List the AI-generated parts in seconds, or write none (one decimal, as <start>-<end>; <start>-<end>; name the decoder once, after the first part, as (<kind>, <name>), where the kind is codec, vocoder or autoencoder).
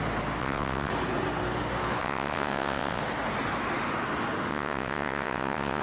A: 0.4-0.9 (vocoder, WaveNeXt); 2.0-3.0; 4.5-5.8